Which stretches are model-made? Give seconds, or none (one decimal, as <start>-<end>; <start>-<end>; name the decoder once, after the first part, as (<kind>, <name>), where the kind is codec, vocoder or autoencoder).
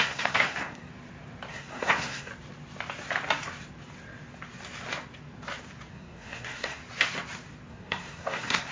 0.0-0.9 (codec, SNAC); 1.5-2.3; 5.9-6.8; 7.7-8.7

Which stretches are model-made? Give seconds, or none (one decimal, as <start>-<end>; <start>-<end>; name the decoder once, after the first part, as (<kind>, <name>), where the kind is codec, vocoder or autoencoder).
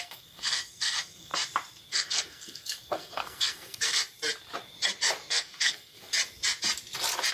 0.0-1.3 (codec, SNAC); 1.9-4.0; 5.3-6.1